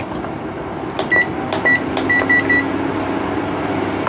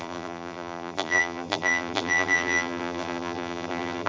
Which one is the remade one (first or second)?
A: second